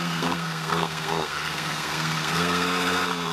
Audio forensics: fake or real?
fake